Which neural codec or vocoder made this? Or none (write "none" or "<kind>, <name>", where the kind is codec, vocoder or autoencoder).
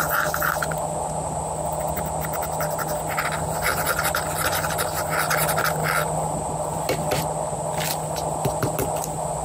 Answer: none